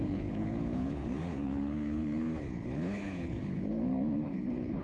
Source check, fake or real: fake